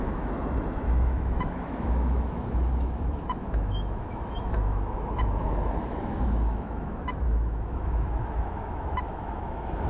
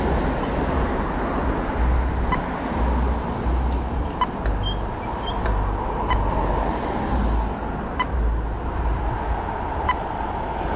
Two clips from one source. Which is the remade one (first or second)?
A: first